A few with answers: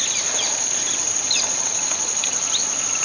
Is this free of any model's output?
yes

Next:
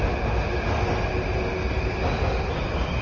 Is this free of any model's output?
yes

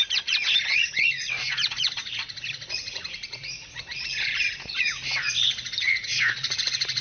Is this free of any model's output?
no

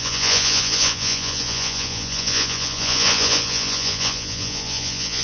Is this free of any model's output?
no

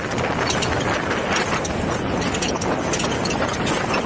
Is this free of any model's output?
yes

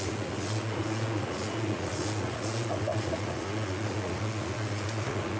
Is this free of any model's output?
no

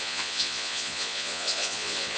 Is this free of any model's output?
no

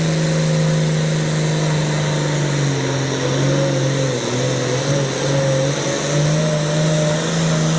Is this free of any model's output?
yes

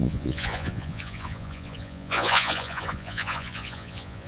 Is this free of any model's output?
no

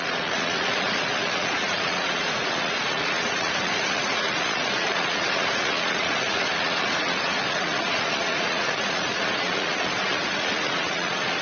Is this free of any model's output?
no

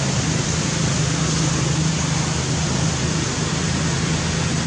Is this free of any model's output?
yes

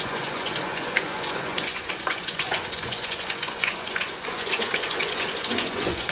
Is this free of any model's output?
no